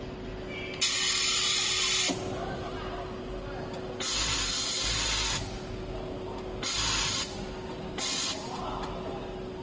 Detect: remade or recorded recorded